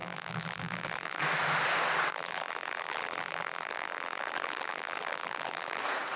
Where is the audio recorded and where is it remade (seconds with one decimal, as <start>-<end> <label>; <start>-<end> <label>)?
0.0-1.2 remade; 1.2-2.1 recorded; 2.1-5.8 remade; 5.8-6.2 recorded